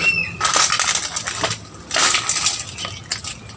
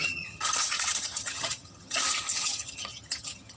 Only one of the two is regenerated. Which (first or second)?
second